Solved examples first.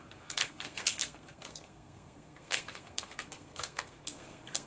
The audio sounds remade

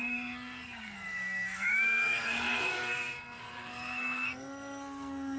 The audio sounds remade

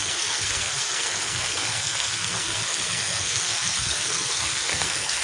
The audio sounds remade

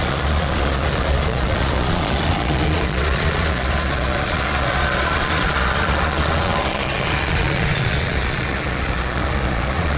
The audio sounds remade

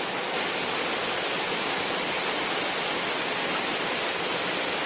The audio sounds recorded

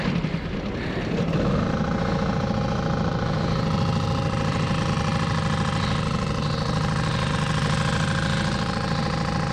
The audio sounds recorded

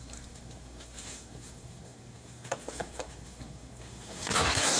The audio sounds remade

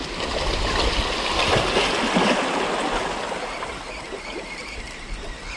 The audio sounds recorded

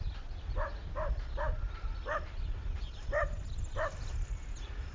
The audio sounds recorded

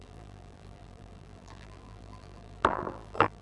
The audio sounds remade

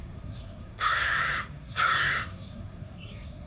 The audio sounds remade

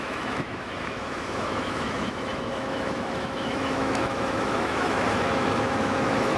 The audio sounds remade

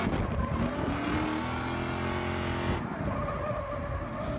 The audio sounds recorded